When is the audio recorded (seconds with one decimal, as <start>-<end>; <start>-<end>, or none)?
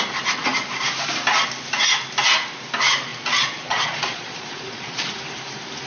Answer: 0.0-3.1; 5.1-5.9